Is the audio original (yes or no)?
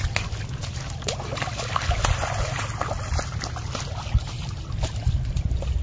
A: yes